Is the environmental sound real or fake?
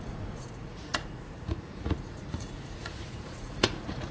fake